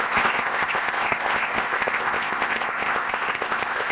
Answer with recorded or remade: remade